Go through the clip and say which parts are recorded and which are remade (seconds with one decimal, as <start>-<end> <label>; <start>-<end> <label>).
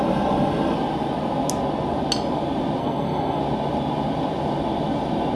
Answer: 0.0-2.8 recorded; 2.8-3.4 remade; 3.4-5.3 recorded